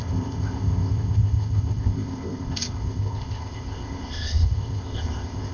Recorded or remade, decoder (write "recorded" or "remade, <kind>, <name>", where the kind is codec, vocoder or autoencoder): remade, codec, ZipCodec